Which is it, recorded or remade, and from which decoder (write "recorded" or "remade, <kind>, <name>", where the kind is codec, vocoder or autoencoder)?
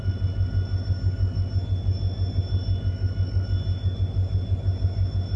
recorded